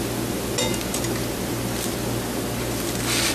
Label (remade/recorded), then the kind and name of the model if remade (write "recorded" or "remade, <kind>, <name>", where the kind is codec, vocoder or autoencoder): recorded